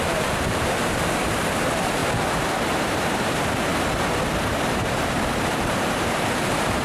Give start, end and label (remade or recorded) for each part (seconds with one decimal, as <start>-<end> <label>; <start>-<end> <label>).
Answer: 0.0-2.0 remade; 2.0-2.7 recorded; 2.7-3.7 remade; 3.7-4.7 recorded; 4.7-6.8 remade